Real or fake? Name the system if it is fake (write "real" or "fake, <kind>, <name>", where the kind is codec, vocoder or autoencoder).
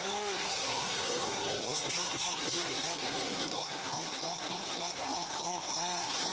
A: fake, codec, SNAC